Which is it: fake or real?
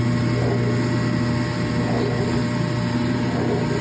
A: real